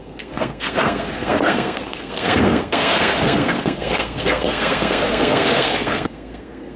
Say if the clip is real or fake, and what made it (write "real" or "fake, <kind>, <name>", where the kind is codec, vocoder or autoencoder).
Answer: fake, codec, SNAC